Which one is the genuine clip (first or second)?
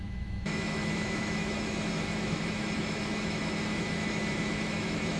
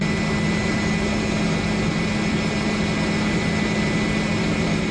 second